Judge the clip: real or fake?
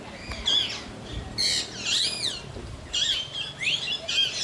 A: real